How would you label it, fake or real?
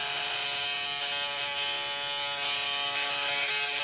real